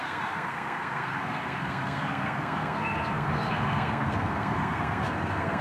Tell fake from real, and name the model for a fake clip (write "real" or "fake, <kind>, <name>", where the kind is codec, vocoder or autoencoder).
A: fake, codec, SNAC